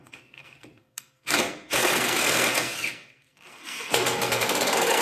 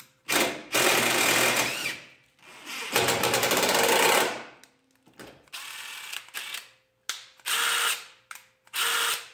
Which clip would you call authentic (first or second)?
second